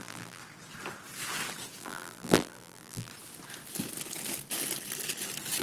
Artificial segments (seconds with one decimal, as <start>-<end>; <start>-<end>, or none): 0.0-0.4; 1.8-3.1